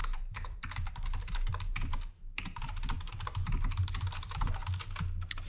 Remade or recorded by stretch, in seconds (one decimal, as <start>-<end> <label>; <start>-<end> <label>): 0.0-4.6 remade; 4.6-5.5 recorded